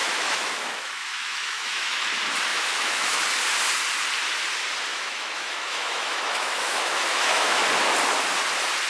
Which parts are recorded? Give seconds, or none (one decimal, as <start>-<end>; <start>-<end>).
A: 2.0-2.5; 3.2-4.9; 7.6-8.9